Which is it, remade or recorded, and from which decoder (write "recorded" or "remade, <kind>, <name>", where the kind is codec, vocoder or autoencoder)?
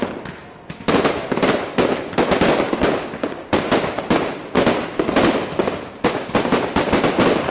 recorded